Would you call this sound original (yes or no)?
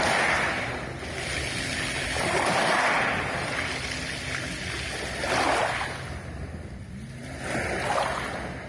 yes